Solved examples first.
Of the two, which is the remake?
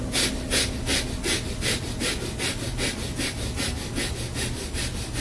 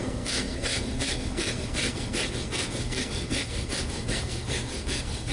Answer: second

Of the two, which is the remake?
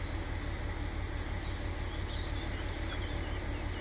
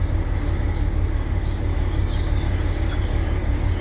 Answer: second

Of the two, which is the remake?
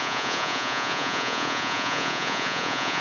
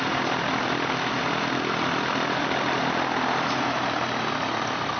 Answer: first